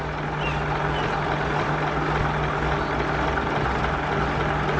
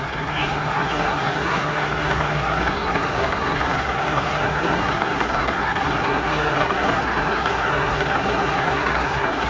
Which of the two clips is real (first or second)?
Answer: first